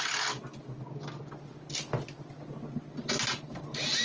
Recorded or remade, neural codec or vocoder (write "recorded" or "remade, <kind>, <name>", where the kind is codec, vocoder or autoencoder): recorded